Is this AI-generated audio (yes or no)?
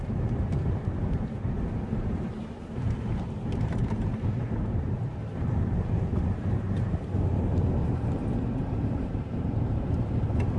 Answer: yes